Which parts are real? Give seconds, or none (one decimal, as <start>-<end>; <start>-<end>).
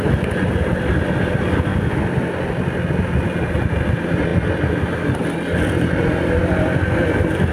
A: 0.0-7.5